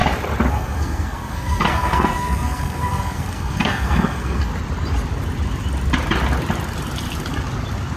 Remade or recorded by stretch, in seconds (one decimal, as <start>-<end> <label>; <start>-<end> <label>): 0.0-0.5 recorded; 0.5-4.5 remade; 4.5-8.0 recorded